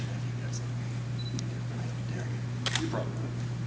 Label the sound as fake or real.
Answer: real